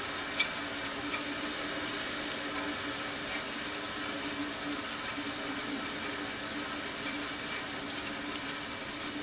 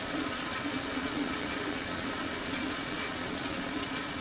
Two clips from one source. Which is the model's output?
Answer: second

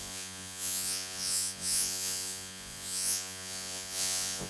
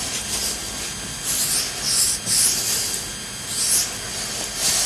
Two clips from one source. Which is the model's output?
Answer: first